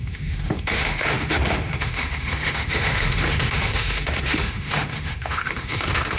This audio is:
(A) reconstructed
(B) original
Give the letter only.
A